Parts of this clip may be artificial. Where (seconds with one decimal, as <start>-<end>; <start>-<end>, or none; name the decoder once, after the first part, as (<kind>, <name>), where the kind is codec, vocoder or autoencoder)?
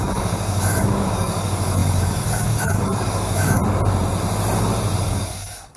0.0-3.6 (codec, DAC); 5.0-5.8